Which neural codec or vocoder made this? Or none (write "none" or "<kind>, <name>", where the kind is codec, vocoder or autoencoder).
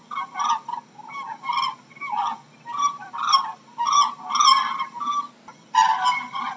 none